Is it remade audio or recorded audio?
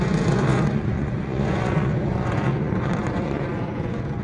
remade